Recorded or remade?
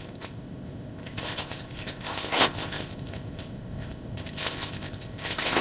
remade